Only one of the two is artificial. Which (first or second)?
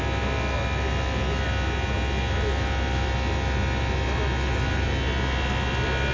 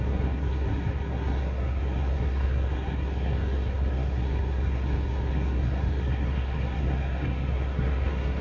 second